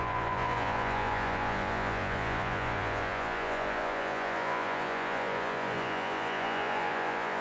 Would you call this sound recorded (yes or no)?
no